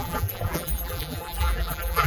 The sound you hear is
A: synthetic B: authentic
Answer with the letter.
A